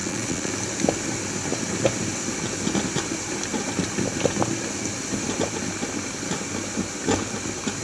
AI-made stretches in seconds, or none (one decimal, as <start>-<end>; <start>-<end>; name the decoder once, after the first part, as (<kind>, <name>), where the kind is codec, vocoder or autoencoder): 0.0-0.5 (vocoder, Vocos)

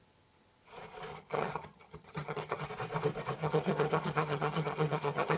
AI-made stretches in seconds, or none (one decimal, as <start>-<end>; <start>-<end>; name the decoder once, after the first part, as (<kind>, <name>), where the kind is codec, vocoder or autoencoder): 1.1-2.7 (vocoder, HiFi-GAN); 3.4-5.4

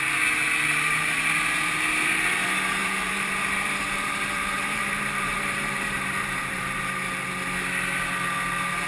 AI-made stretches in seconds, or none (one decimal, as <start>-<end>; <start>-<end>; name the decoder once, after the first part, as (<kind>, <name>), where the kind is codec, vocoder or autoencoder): 2.8-6.8 (vocoder, BigVGAN v2)